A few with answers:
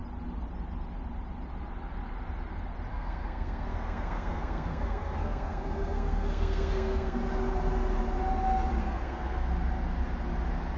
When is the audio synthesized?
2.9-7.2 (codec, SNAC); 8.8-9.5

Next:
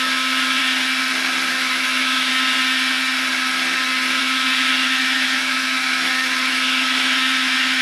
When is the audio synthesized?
0.0-0.6 (autoencoder, DAC-VAE); 1.5-2.3; 4.2-7.8

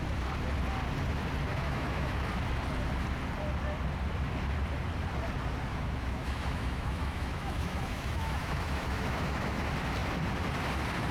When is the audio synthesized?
1.5-2.3 (autoencoder, DAC-VAE); 5.7-9.6